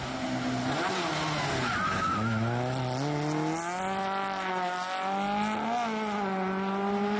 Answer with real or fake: real